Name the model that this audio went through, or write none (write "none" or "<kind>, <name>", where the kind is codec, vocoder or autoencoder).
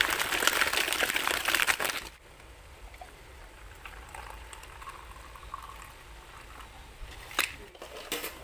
none